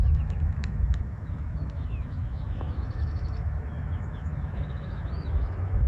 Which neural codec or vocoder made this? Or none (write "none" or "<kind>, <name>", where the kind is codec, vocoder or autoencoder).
autoencoder, DAC-VAE